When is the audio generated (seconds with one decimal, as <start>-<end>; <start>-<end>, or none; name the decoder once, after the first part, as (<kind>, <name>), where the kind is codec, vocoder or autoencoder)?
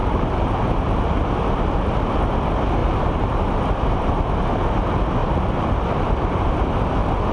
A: 0.0-0.6 (vocoder, BigVGAN v2); 2.8-4.3; 5.2-6.7